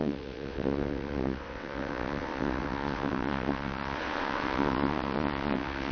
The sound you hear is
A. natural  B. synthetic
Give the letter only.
B